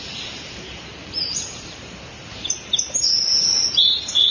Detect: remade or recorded remade